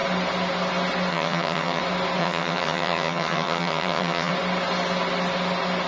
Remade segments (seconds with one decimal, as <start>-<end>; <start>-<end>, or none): 1.1-1.8; 2.2-4.3